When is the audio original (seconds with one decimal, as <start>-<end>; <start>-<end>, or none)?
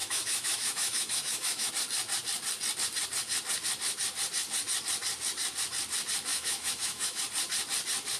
1.7-6.3; 7.2-8.2